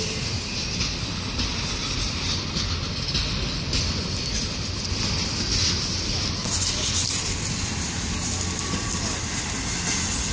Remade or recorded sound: recorded